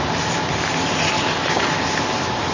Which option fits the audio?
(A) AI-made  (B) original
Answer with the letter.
B